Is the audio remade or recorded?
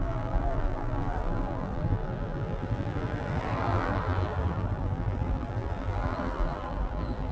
remade